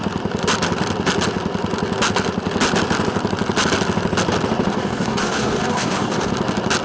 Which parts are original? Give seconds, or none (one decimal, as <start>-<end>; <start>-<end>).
0.0-4.7; 6.3-6.8